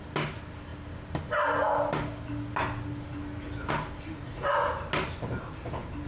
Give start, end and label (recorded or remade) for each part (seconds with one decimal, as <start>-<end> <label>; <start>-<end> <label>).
0.0-6.1 recorded